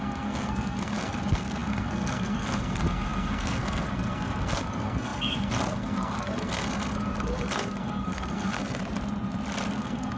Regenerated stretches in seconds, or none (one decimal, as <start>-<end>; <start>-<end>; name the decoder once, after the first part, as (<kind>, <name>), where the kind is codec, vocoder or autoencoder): 0.0-8.8 (codec, SNAC); 9.7-10.2